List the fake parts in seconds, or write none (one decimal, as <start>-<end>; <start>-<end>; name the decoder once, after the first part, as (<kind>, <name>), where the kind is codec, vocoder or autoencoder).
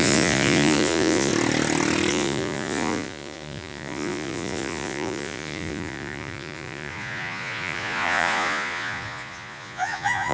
0.0-1.3 (vocoder, Vocos); 2.1-10.3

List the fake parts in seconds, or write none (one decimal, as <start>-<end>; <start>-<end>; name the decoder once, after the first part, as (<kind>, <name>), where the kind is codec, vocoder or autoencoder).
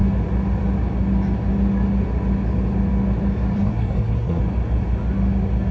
3.6-4.4 (codec, SNAC)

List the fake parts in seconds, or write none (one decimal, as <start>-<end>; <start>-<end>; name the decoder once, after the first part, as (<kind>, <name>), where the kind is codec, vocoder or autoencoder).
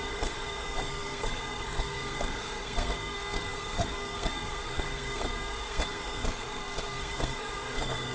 0.0-8.1 (codec, SNAC)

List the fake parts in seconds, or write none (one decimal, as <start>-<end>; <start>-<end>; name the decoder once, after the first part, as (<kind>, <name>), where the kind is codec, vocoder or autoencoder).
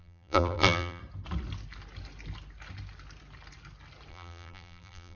0.0-1.0 (vocoder, BigVGAN v2); 4.1-5.2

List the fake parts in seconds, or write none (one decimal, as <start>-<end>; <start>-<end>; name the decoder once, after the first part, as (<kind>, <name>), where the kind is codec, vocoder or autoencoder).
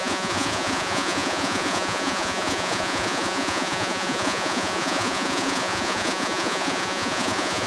0.0-7.7 (vocoder, Vocos)